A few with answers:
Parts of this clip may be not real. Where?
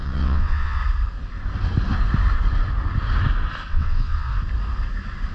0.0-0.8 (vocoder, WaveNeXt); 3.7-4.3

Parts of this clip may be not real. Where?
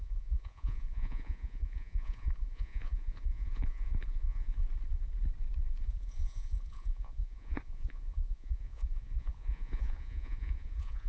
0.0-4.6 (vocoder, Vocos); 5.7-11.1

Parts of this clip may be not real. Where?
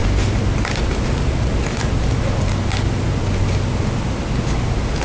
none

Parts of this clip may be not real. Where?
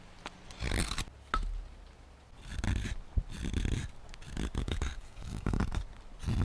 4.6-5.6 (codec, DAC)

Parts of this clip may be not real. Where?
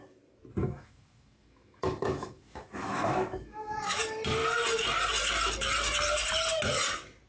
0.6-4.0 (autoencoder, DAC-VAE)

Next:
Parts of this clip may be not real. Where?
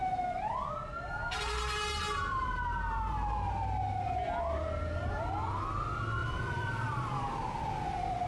6.2-8.3 (vocoder, BigVGAN v2)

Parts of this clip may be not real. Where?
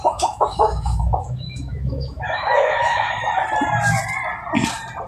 0.0-3.1 (autoencoder, DAC-VAE)